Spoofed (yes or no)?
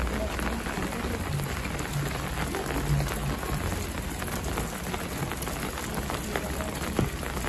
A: no